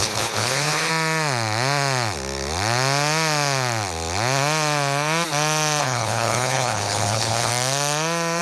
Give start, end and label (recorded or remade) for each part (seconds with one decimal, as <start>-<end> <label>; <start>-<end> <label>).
0.0-0.9 remade; 0.9-5.8 recorded; 5.8-7.5 remade; 7.5-8.4 recorded